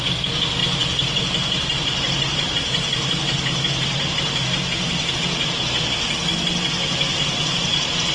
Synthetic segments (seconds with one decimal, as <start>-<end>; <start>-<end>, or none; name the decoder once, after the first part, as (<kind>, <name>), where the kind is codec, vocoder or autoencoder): 0.6-5.1 (vocoder, BigVGAN v2); 7.1-8.1